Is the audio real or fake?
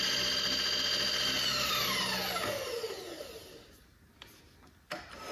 real